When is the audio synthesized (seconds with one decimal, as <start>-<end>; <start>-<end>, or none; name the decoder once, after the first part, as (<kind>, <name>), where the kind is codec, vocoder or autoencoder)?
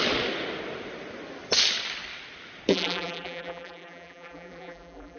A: 2.7-5.2 (vocoder, BigVGAN v2)